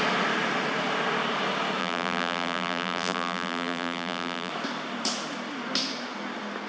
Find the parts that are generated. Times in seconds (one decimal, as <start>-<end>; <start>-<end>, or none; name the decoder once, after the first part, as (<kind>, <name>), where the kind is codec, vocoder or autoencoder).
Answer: 1.8-4.5 (vocoder, BigVGAN v2)